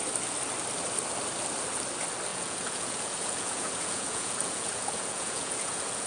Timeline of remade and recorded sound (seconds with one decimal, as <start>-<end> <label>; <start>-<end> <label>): 0.0-2.3 recorded; 2.3-6.1 remade